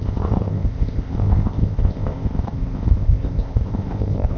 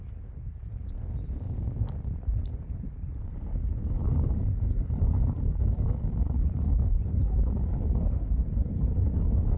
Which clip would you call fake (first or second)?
first